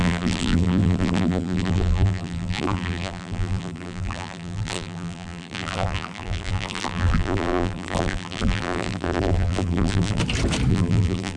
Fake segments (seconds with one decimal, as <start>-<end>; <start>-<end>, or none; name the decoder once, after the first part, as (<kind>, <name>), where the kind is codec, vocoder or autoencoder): 0.0-10.2 (vocoder, BigVGAN v2); 10.7-11.4